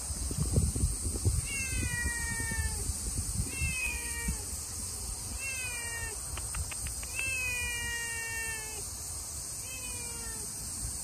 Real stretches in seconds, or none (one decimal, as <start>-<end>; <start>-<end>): 0.0-3.8; 4.3-11.0